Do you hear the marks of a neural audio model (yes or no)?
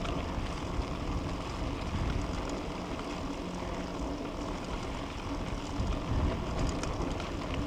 no